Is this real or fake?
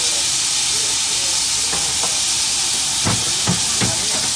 real